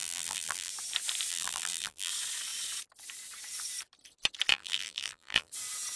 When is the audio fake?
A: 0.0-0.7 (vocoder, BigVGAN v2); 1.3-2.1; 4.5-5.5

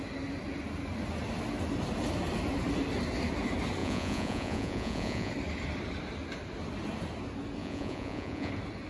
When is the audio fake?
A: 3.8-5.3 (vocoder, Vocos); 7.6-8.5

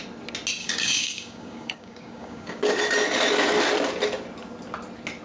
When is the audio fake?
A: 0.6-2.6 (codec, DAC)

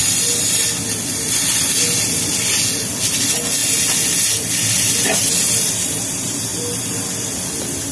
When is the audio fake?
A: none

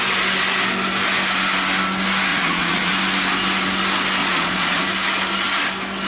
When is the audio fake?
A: 2.3-2.9 (vocoder, Vocos); 4.2-4.8

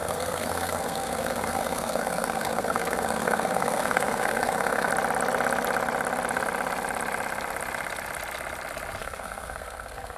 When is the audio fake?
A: 0.0-4.9 (codec, SNAC); 9.0-10.2

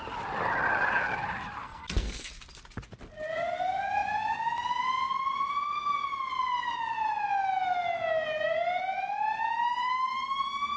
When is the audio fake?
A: 1.6-2.3 (codec, SNAC)

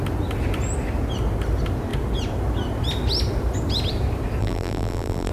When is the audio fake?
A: 4.4-5.3 (vocoder, BigVGAN v2)